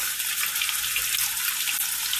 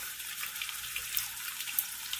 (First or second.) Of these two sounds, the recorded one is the first